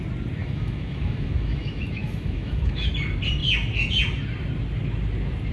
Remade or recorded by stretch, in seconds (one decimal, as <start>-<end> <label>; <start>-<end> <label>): 0.0-0.4 recorded; 0.4-2.9 remade; 2.9-5.5 recorded